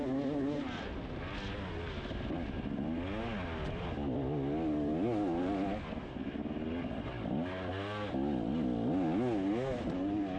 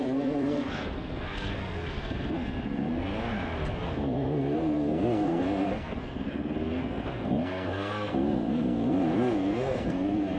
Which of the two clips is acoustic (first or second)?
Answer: first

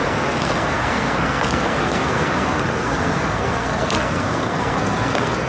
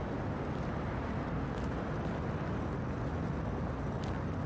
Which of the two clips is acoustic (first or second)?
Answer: second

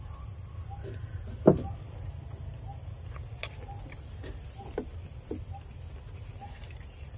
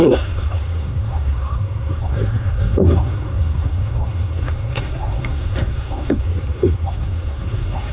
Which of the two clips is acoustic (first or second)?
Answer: first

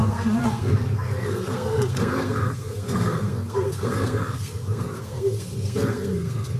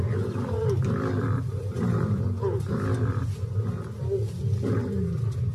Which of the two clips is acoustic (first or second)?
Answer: second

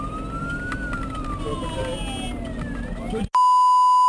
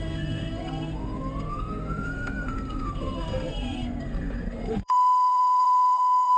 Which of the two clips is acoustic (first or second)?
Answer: first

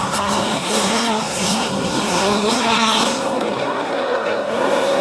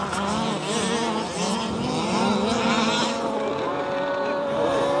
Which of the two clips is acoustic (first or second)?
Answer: second